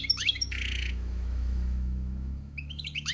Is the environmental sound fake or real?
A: fake